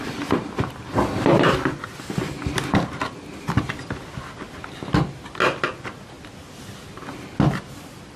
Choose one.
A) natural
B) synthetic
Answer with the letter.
A